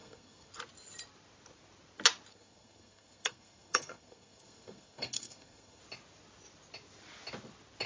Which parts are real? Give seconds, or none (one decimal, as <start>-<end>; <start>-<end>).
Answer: 0.5-2.3; 5.8-7.9